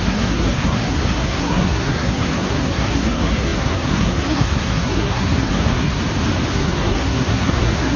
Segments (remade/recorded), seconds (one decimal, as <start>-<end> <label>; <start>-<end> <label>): 0.0-6.0 remade; 6.0-6.5 recorded; 6.5-8.0 remade